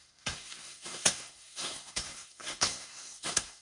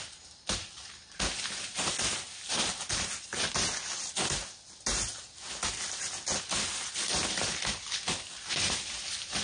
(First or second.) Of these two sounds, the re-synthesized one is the first